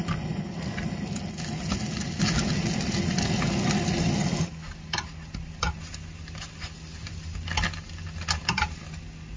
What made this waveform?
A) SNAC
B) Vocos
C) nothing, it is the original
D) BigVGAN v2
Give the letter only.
C